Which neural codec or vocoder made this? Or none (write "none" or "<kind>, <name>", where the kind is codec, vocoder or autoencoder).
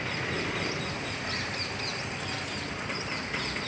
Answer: none